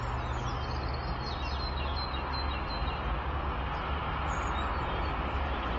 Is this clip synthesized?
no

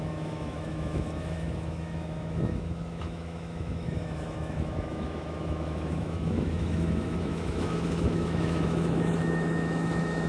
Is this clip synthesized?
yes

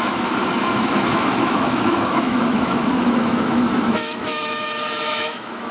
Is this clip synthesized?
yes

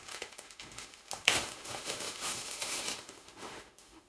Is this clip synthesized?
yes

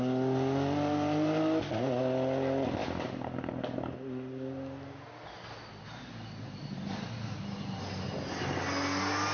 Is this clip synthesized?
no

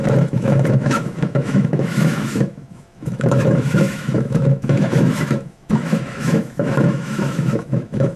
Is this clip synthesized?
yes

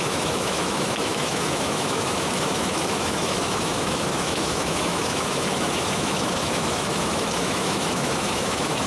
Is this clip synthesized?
yes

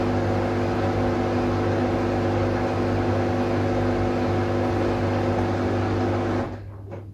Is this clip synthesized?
no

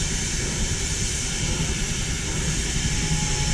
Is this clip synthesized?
no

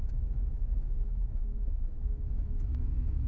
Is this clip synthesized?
yes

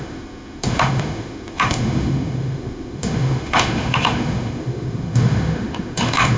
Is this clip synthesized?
yes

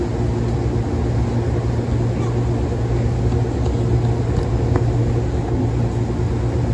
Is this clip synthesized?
no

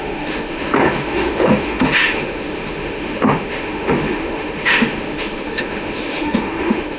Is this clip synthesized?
yes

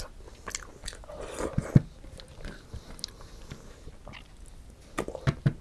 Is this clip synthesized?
no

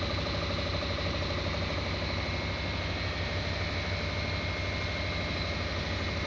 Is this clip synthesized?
no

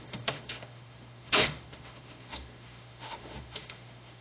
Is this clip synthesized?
yes